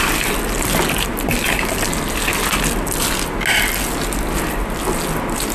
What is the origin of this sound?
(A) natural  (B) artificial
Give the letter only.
A